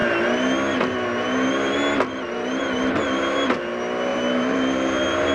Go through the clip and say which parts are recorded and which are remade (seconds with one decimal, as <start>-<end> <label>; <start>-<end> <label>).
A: 0.0-4.1 recorded; 4.1-5.3 remade